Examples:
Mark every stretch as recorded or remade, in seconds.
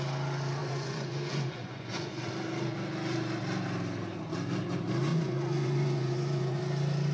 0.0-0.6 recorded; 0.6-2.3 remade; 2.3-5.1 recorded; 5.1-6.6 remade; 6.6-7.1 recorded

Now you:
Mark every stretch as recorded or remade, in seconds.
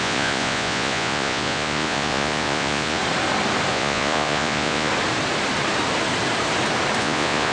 0.0-3.0 remade; 3.0-3.7 recorded; 3.7-4.9 remade; 4.9-7.0 recorded; 7.0-7.5 remade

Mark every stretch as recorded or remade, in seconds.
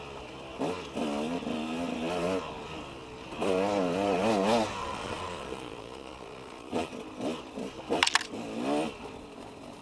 0.0-4.8 recorded; 4.8-6.9 remade; 6.9-9.8 recorded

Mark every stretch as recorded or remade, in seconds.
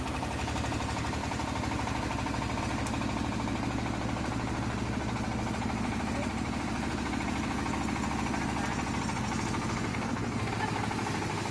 0.0-9.9 recorded; 9.9-10.5 remade; 10.5-11.5 recorded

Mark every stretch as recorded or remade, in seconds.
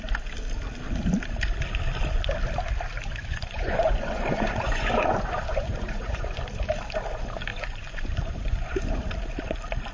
0.0-3.2 recorded; 3.2-6.4 remade; 6.4-7.5 recorded; 7.5-9.0 remade; 9.0-9.9 recorded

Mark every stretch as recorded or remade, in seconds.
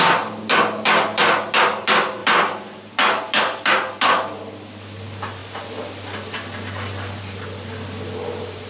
0.0-8.7 recorded